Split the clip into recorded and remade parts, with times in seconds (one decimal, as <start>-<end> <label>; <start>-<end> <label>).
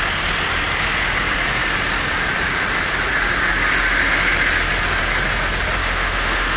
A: 0.0-5.8 recorded; 5.8-6.6 remade